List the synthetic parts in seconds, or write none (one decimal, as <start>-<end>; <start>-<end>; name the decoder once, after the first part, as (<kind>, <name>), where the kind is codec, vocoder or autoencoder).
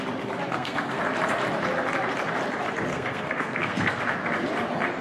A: 0.5-1.0 (codec, SNAC); 2.9-4.0